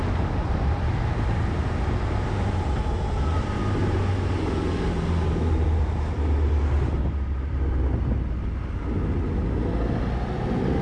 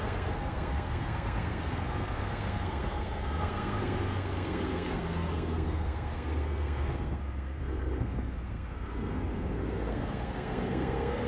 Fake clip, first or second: second